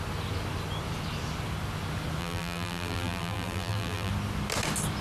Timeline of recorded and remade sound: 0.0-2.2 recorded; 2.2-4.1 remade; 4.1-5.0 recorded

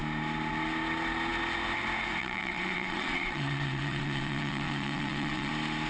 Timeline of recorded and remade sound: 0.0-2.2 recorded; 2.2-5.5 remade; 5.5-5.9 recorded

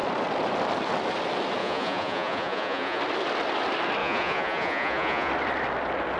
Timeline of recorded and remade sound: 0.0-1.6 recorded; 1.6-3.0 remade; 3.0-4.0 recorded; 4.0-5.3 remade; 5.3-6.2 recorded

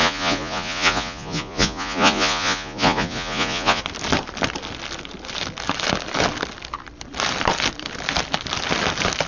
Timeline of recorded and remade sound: 0.0-3.8 remade; 3.8-9.3 recorded

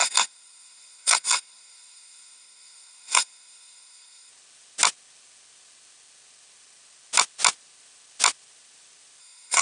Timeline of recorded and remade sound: 0.0-4.3 remade; 4.3-9.2 recorded; 9.2-9.6 remade